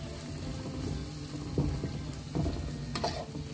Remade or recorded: recorded